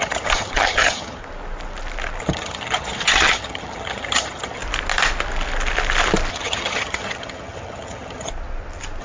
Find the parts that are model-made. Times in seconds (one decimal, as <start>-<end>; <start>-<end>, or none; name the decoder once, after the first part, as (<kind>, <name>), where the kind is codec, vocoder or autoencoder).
0.0-1.2 (vocoder, HiFi-GAN); 2.2-4.6; 6.3-8.3